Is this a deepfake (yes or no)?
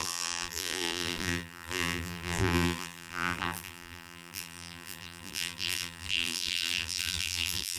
yes